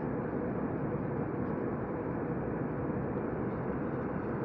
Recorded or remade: recorded